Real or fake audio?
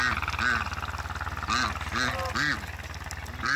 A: real